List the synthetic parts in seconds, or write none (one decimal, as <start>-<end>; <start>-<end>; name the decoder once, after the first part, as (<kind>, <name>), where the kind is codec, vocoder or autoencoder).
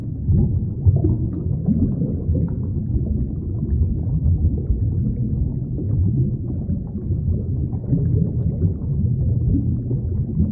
5.5-8.9 (vocoder, Vocos)